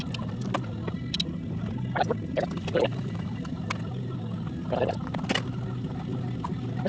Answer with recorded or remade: recorded